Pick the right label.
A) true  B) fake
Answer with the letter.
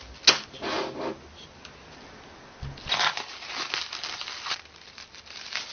A